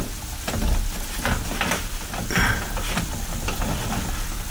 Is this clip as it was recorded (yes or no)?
yes